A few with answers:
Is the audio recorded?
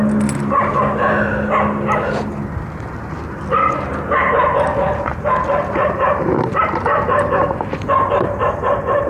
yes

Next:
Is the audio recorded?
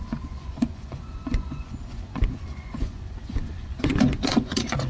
no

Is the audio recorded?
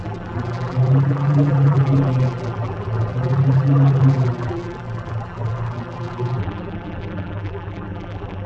no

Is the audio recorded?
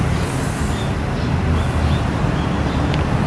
yes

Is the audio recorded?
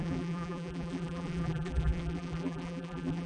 no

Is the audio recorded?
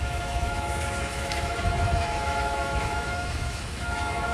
no